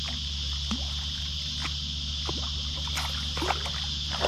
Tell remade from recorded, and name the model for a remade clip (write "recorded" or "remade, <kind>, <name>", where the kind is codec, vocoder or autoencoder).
recorded